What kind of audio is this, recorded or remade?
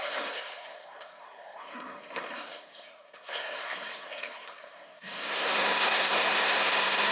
remade